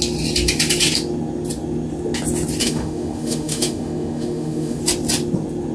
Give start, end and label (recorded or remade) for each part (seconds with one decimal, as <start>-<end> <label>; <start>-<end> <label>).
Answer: 0.0-2.6 recorded; 2.6-4.8 remade; 4.8-5.7 recorded